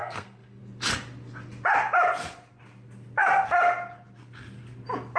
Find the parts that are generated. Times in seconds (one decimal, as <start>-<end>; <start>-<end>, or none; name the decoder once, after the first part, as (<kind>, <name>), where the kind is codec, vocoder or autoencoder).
0.0-0.6 (codec, SNAC)